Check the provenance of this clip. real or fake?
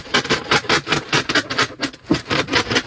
fake